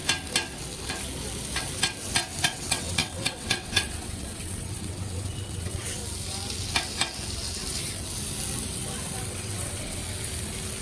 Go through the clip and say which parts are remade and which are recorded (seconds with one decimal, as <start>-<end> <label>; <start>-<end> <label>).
0.0-2.4 recorded; 2.4-6.0 remade; 6.0-9.3 recorded; 9.3-10.0 remade; 10.0-10.8 recorded